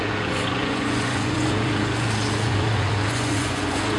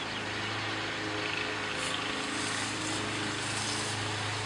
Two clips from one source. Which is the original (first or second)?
second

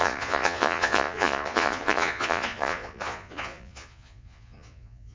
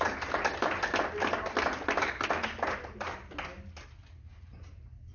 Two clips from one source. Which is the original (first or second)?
second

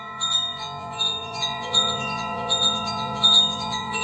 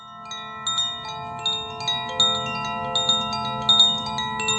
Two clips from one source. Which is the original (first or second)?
second